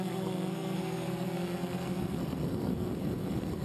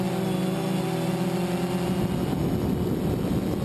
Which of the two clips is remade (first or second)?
first